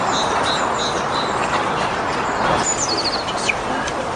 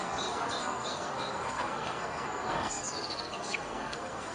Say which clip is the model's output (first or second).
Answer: second